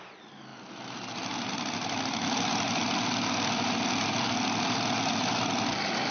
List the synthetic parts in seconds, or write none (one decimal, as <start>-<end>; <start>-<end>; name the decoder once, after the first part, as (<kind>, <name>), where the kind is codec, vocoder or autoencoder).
none